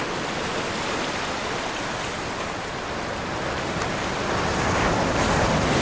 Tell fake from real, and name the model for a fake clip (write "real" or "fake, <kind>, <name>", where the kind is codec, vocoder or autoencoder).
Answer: real